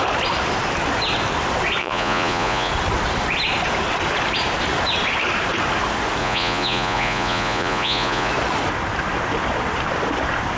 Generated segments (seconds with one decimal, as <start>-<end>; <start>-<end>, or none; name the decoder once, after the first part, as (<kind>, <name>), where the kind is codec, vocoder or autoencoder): 1.8-2.7 (vocoder, Vocos); 6.2-8.3